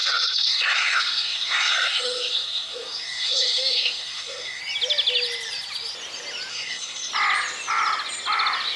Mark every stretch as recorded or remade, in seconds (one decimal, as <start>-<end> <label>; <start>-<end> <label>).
0.0-4.6 remade; 4.6-6.5 recorded; 6.5-7.1 remade; 7.1-8.8 recorded